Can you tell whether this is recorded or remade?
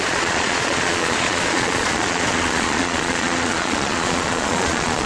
remade